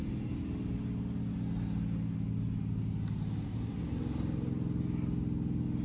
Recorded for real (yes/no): yes